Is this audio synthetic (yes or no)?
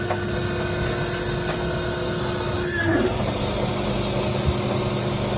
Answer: no